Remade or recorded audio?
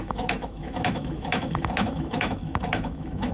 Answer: remade